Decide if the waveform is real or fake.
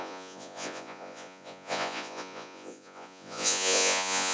fake